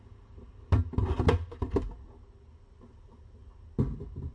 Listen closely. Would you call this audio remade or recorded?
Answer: recorded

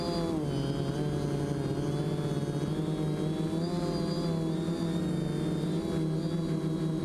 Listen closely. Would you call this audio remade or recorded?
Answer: recorded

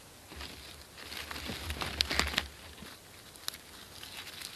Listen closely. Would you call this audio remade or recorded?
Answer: recorded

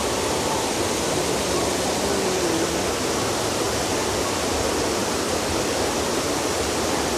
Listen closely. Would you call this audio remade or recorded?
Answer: recorded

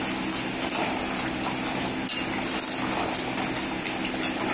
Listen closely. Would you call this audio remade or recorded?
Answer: recorded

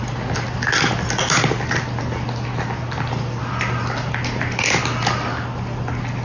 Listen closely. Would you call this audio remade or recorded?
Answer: recorded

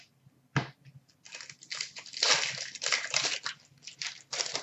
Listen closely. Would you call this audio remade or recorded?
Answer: recorded